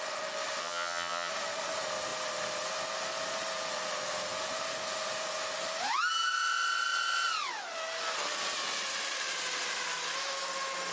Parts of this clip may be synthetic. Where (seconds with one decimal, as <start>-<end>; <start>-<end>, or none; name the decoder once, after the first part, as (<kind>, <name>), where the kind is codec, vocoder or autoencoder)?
0.6-1.3 (vocoder, HiFi-GAN)